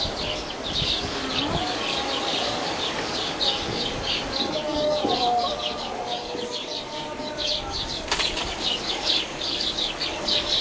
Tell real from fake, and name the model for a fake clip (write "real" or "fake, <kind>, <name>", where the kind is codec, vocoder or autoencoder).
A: fake, codec, DAC